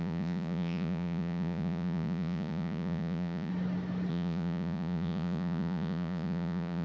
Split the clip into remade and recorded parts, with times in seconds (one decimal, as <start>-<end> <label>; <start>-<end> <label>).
0.0-3.5 remade; 3.5-4.1 recorded; 4.1-6.8 remade